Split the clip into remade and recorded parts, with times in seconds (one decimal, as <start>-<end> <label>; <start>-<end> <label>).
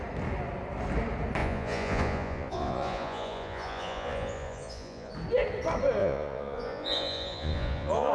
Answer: 0.0-1.4 recorded; 1.4-5.1 remade; 5.1-6.0 recorded; 6.0-8.1 remade